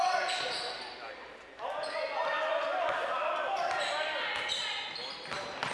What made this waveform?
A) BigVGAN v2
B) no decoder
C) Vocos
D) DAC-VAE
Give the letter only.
B